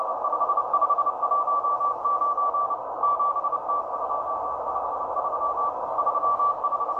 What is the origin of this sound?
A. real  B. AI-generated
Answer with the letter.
A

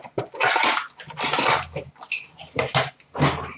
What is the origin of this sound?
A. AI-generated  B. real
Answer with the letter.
B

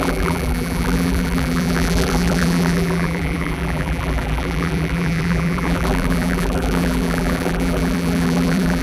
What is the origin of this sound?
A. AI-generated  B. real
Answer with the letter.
A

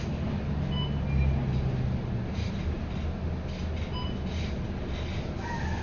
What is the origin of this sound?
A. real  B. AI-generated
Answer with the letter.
A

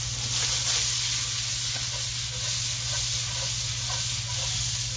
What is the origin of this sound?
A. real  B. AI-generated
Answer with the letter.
A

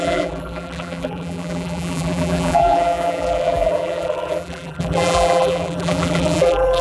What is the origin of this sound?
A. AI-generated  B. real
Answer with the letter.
A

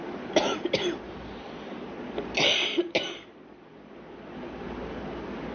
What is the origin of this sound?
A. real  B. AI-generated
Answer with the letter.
A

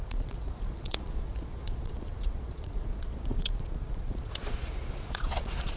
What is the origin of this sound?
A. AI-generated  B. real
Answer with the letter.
A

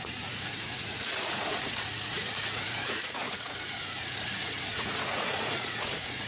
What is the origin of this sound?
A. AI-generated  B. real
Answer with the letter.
A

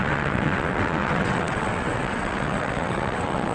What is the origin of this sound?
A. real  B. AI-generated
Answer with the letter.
B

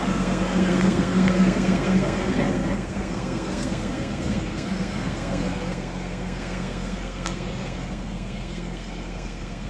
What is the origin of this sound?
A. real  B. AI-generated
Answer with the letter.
B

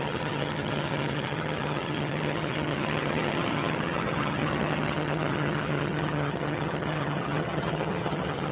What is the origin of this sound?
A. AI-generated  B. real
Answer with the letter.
A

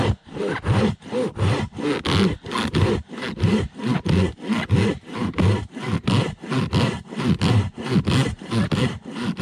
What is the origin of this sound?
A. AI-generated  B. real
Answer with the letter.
B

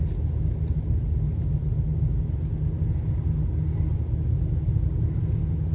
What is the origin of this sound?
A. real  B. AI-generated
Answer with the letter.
A